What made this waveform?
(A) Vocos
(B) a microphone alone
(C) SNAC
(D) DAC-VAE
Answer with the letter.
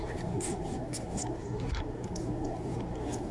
C